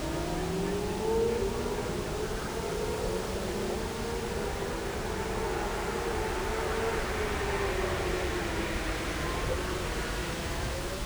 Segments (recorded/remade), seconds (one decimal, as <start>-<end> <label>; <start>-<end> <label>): 0.0-10.2 recorded; 10.2-11.1 remade